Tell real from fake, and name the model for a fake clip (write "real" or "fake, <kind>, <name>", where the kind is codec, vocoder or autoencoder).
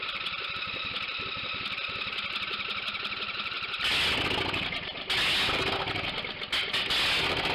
real